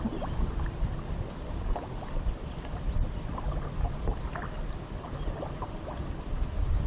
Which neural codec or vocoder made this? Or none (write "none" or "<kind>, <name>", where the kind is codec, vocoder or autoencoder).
vocoder, BigVGAN v2